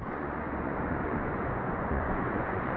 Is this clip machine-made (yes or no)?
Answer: yes